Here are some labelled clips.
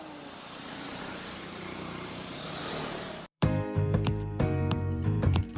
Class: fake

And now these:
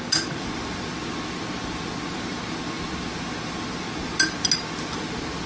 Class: real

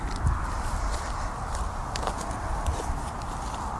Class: real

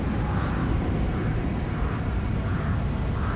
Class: fake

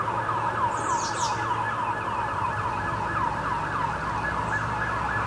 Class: real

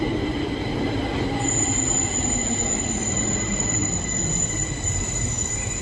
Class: fake